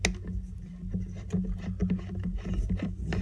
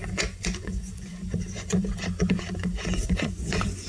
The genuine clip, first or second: first